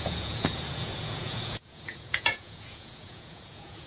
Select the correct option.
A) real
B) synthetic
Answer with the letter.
B